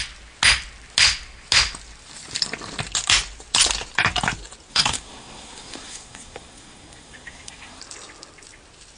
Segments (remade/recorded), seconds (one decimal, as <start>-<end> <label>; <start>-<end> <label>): 0.0-4.7 recorded; 4.7-7.8 remade; 7.8-9.0 recorded